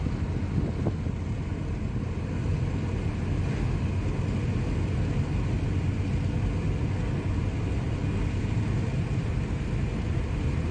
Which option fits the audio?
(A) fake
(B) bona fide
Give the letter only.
B